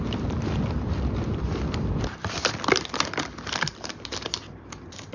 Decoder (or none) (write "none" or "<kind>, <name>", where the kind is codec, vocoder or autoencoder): vocoder, BigVGAN v2